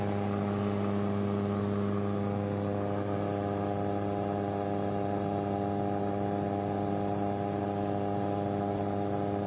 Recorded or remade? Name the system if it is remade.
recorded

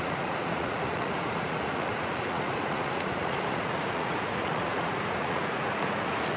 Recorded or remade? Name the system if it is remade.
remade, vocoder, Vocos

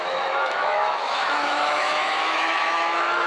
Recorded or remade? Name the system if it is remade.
remade, autoencoder, DAC-VAE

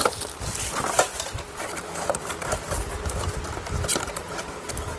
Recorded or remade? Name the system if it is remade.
remade, vocoder, BigVGAN v2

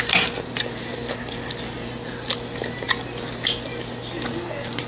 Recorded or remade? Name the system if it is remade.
recorded